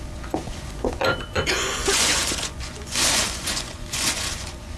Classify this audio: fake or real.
fake